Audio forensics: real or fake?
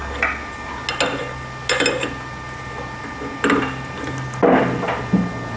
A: real